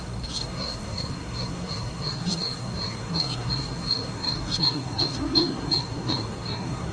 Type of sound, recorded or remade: remade